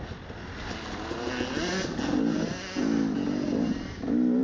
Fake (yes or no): no